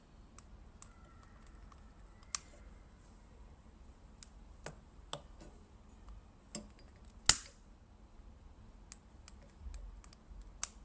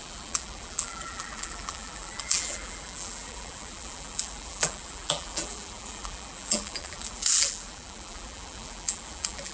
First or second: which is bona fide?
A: first